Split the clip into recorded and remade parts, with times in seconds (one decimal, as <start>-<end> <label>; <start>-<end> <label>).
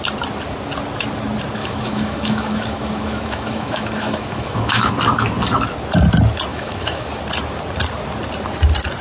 0.0-1.6 recorded; 1.6-4.9 remade; 4.9-6.5 recorded; 6.5-7.2 remade; 7.2-9.0 recorded